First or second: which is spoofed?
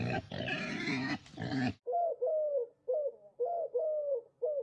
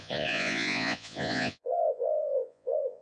second